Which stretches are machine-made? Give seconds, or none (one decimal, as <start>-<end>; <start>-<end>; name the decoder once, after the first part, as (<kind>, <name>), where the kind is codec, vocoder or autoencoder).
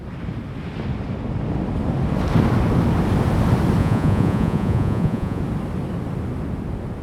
3.8-5.4 (vocoder, Vocos)